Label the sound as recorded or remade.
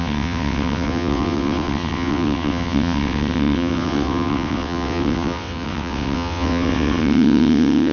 remade